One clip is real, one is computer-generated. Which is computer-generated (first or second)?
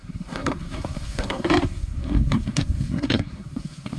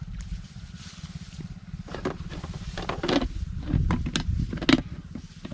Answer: first